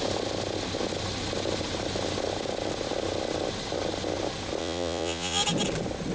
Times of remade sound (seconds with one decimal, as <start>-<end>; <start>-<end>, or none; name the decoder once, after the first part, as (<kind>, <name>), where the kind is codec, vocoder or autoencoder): 4.6-5.4 (vocoder, Vocos)